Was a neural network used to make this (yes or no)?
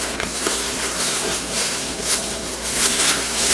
yes